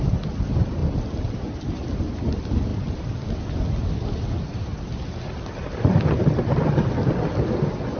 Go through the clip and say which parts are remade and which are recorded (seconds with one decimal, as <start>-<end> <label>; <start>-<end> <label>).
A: 0.0-8.0 recorded